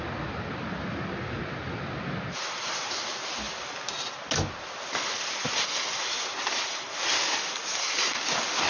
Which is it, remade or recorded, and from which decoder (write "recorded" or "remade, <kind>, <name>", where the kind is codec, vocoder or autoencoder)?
recorded